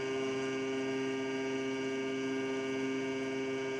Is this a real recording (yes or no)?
yes